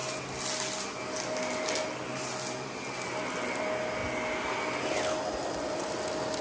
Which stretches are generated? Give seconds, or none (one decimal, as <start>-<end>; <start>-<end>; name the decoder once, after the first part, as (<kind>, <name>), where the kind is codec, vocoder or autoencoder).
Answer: none